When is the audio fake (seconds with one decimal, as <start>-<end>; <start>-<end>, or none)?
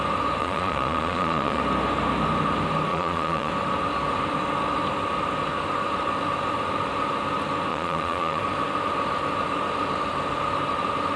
0.4-1.6; 2.9-3.5; 7.7-8.4